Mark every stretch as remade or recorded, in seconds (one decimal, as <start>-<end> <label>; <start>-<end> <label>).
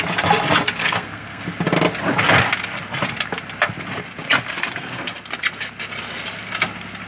0.0-0.8 recorded; 0.8-1.4 remade; 1.4-7.1 recorded